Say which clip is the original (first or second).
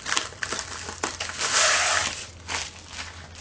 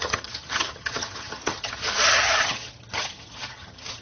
first